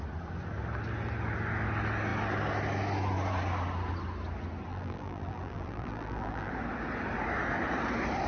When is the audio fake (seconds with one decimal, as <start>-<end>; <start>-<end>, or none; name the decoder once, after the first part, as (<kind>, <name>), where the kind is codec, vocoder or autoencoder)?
4.7-6.5 (vocoder, BigVGAN v2)

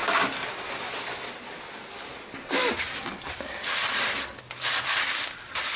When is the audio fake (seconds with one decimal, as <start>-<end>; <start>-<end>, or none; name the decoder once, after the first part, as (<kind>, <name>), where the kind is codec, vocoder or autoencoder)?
3.5-5.8 (vocoder, BigVGAN v2)

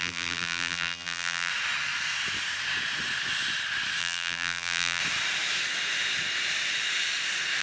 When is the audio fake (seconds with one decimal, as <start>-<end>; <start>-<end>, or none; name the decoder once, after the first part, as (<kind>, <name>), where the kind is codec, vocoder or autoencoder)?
0.0-1.5 (vocoder, BigVGAN v2); 4.0-5.0

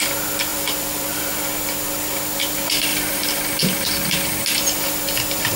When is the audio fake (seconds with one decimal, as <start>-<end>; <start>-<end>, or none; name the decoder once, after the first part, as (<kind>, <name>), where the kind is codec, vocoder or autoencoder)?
0.5-1.3 (vocoder, BigVGAN v2); 2.9-3.5